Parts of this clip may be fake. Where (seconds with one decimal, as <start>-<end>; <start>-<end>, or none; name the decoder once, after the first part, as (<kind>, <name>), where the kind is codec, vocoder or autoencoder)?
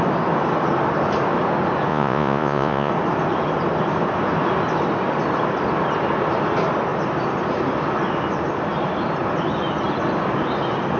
1.9-2.9 (vocoder, Vocos)